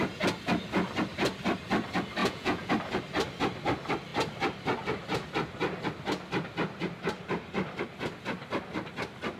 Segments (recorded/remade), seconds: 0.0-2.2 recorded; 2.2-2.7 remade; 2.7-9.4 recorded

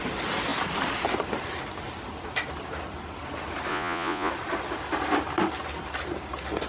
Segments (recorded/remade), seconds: 0.0-3.7 recorded; 3.7-4.3 remade; 4.3-6.7 recorded